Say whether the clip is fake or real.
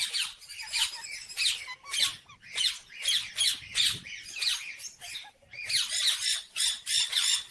real